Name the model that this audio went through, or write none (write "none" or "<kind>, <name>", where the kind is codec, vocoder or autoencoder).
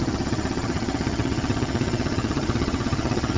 vocoder, HiFi-GAN